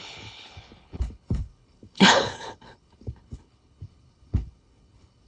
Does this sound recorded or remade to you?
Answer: remade